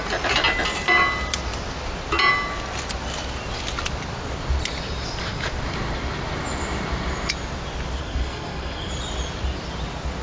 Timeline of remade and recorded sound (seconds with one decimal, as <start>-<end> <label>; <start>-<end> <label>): 0.0-8.0 recorded; 8.0-8.9 remade; 8.9-10.2 recorded